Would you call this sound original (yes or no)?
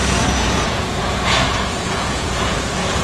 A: no